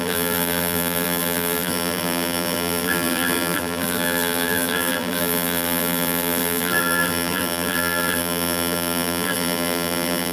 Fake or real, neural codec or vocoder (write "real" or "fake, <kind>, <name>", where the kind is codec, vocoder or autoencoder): fake, vocoder, BigVGAN v2